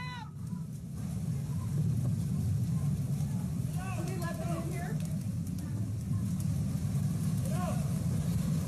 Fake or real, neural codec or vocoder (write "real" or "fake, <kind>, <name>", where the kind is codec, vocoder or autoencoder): real